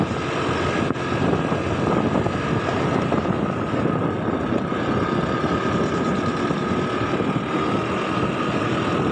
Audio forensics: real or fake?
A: real